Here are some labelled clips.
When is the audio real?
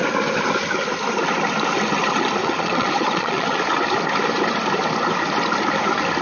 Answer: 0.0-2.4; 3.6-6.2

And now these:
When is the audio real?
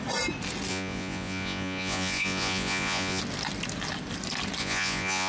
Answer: 0.0-0.7; 3.2-4.6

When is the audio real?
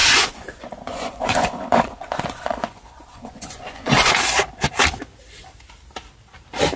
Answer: 4.1-6.8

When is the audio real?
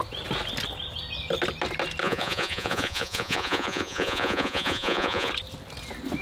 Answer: 0.0-2.0; 5.3-6.2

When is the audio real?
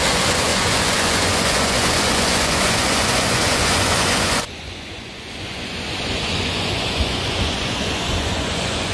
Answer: none